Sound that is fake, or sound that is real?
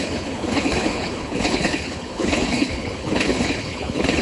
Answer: fake